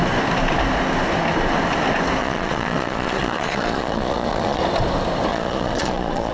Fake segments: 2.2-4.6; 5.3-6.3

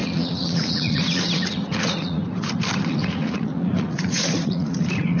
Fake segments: 0.0-2.2; 2.8-5.2

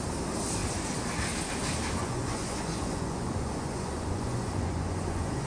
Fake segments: 2.0-5.5

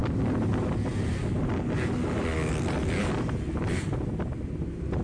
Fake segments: none

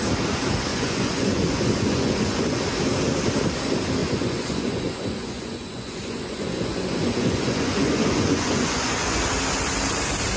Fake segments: 0.7-2.6; 4.0-9.2

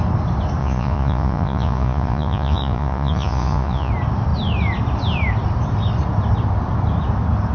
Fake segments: 0.6-3.9

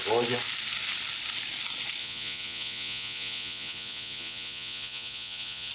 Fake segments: 2.0-5.7

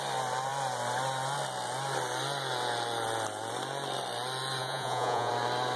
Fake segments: 4.6-5.3